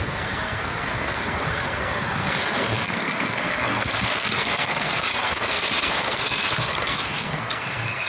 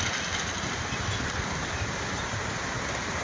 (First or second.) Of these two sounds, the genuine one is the second